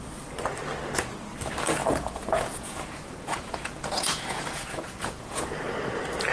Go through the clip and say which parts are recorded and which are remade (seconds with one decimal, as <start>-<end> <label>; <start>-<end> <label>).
0.0-1.8 recorded; 1.8-5.6 remade; 5.6-6.3 recorded